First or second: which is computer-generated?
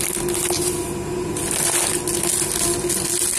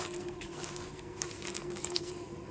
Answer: second